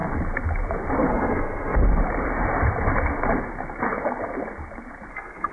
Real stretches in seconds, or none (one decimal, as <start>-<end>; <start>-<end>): 0.0-1.1; 1.8-5.1